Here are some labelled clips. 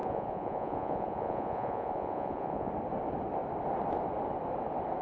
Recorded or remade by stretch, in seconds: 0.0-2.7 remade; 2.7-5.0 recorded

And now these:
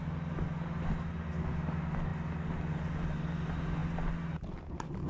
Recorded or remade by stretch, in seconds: 0.0-5.1 recorded

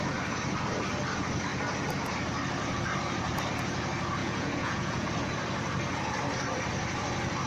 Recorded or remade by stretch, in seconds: 0.0-4.2 recorded; 4.2-5.1 remade; 5.1-7.5 recorded